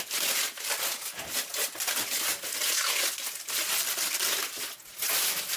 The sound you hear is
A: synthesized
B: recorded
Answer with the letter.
B